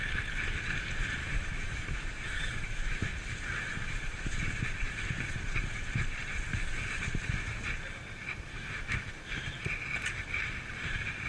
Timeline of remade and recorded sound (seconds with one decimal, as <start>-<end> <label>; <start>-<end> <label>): 0.0-1.2 recorded; 1.2-3.1 remade; 3.1-3.7 recorded; 3.7-4.5 remade; 4.5-8.5 recorded; 8.5-9.1 remade; 9.1-11.3 recorded